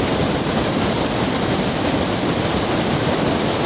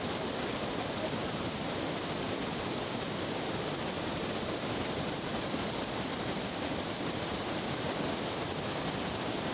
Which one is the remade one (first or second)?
second